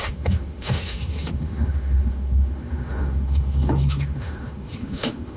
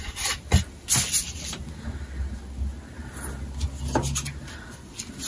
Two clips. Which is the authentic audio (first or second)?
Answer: second